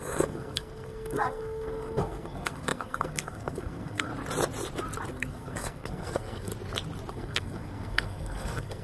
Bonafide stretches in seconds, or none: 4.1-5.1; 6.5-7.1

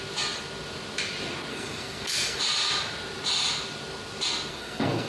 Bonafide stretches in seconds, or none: 0.0-1.5; 2.4-4.5